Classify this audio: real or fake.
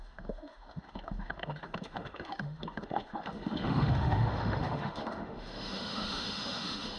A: fake